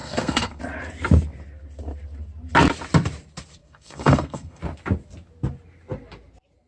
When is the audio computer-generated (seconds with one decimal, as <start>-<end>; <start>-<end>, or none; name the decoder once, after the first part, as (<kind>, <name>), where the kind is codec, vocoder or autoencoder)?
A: 0.0-0.6 (codec, SNAC); 3.6-4.6